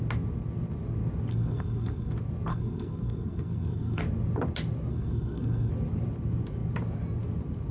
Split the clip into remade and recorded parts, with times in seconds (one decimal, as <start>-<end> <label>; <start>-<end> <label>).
0.0-1.3 recorded; 1.3-2.1 remade; 2.1-2.5 recorded; 2.5-4.0 remade; 4.0-4.9 recorded; 4.9-5.7 remade; 5.7-7.7 recorded